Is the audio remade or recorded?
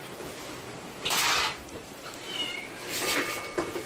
remade